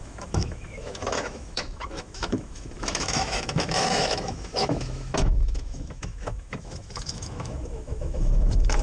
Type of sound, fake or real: fake